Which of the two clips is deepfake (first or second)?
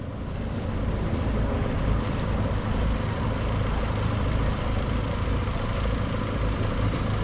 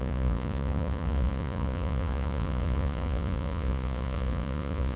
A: second